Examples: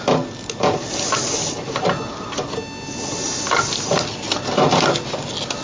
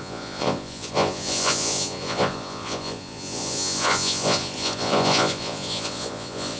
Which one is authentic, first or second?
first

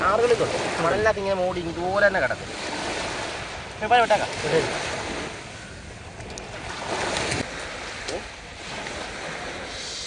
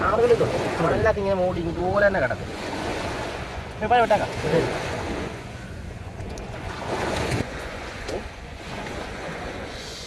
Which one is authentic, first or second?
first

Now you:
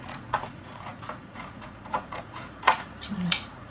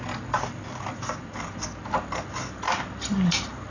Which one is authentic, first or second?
second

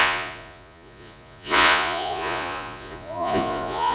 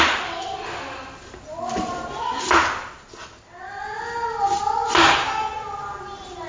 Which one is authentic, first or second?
second